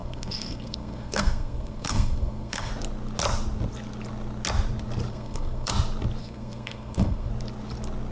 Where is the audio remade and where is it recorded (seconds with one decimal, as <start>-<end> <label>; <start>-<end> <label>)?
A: 0.0-2.7 remade; 2.7-5.1 recorded; 5.1-5.7 remade; 5.7-6.2 recorded; 6.2-7.3 remade; 7.3-8.1 recorded